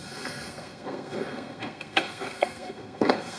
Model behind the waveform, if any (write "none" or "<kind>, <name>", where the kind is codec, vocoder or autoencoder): codec, SNAC